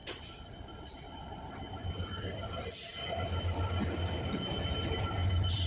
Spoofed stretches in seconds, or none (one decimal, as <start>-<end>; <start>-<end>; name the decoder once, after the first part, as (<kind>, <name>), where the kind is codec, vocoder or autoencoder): none